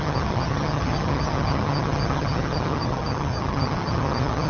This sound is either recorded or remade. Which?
remade